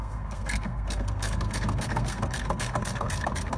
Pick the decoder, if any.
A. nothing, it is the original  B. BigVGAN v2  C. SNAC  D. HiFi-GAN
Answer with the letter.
C